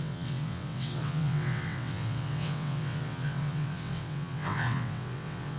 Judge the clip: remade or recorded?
remade